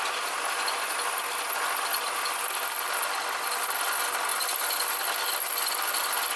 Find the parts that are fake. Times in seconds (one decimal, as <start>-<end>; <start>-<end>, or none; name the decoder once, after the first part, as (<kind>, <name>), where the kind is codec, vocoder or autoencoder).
none